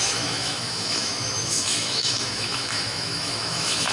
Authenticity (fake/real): fake